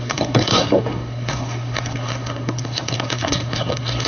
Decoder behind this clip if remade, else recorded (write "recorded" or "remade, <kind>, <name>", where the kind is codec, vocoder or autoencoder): remade, codec, SNAC